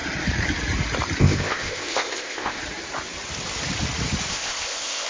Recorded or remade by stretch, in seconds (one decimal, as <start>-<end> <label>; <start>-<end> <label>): 0.0-1.2 recorded; 1.2-2.6 remade; 2.6-4.3 recorded; 4.3-5.1 remade